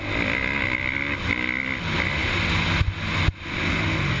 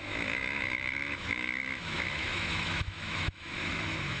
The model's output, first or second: second